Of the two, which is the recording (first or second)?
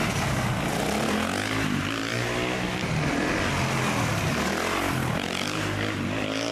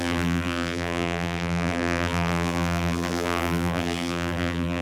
first